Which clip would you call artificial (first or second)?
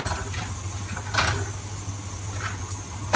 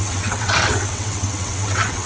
second